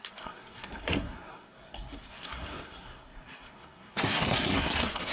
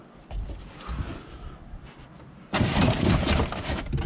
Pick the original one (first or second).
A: second